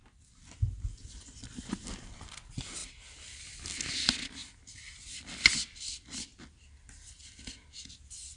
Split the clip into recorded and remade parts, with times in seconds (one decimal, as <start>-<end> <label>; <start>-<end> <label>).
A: 0.0-8.4 recorded